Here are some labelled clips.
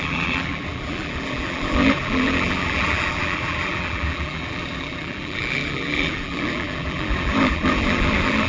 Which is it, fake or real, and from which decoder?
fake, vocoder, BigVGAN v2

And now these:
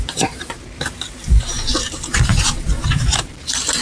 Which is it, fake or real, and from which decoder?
fake, vocoder, BigVGAN v2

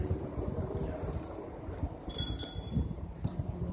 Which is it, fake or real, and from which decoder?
fake, vocoder, BigVGAN v2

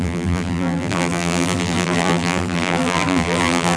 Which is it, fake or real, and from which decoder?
fake, vocoder, BigVGAN v2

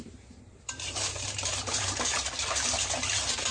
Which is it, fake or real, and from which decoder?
fake, vocoder, BigVGAN v2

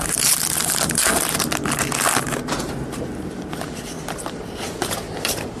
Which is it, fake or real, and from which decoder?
real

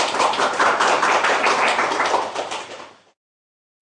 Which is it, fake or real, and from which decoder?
fake, vocoder, BigVGAN v2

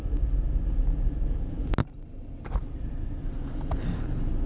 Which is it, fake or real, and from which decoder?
real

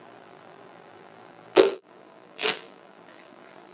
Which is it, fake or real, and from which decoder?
fake, vocoder, BigVGAN v2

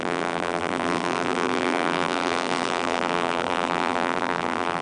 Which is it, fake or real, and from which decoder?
fake, vocoder, BigVGAN v2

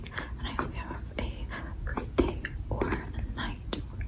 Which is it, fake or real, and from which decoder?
real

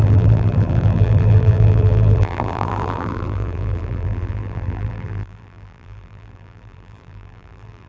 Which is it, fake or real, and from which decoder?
fake, vocoder, BigVGAN v2